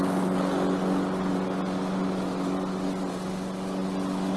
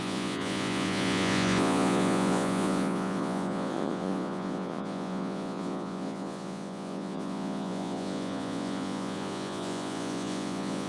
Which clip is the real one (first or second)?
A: first